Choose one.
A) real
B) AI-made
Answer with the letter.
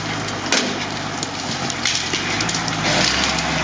A